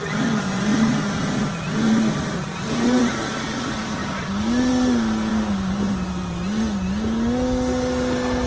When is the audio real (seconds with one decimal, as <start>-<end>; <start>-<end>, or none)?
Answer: 0.0-0.7; 3.0-4.0; 4.7-5.3; 6.6-8.5